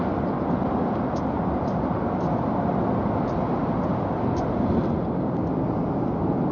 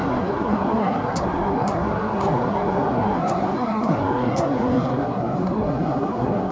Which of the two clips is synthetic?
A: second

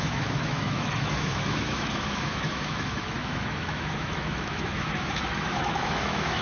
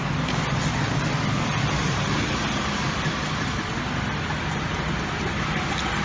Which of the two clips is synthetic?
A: first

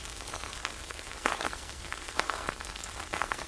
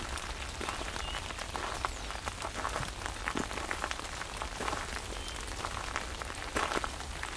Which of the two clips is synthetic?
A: first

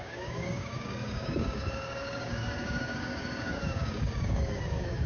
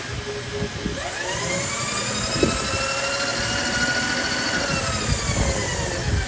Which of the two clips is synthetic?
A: first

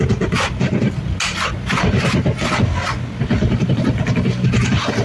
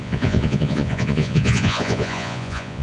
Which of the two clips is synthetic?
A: second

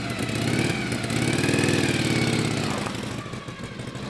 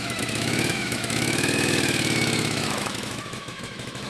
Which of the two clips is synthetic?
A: second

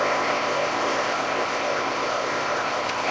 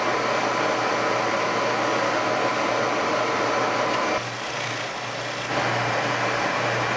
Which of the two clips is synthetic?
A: first